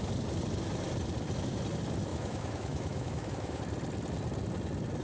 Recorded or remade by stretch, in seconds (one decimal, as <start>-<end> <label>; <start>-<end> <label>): 0.0-2.1 recorded; 2.1-3.6 remade; 3.6-5.0 recorded